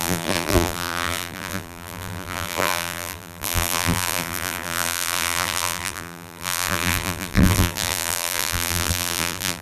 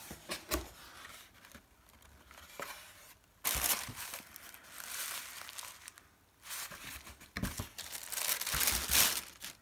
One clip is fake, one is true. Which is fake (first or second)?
first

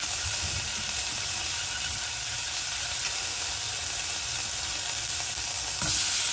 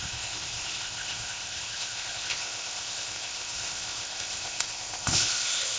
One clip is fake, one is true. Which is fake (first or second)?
second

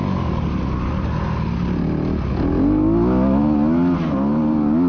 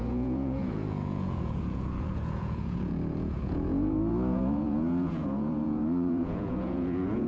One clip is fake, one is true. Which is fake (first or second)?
second